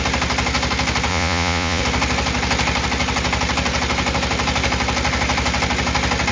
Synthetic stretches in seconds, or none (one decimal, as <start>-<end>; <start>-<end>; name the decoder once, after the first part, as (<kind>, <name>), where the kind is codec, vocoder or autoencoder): 1.1-1.8 (vocoder, Vocos)